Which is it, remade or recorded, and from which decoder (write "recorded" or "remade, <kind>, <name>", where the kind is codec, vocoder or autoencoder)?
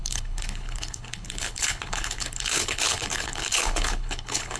remade, codec, HILCodec